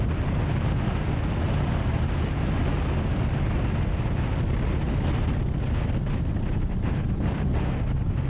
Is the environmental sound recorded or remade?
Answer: recorded